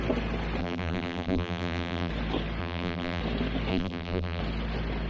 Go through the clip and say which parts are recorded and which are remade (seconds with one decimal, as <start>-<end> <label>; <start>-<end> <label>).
0.0-0.6 recorded; 0.6-2.1 remade; 2.1-2.6 recorded; 2.6-3.2 remade; 3.2-3.7 recorded; 3.7-4.4 remade; 4.4-5.1 recorded